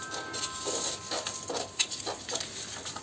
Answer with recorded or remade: recorded